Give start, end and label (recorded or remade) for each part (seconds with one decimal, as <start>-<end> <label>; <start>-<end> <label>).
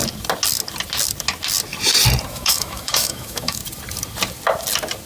0.0-2.3 recorded; 2.3-3.6 remade; 3.6-5.1 recorded